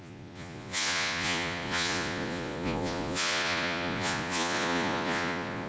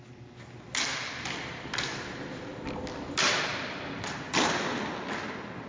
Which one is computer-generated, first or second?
first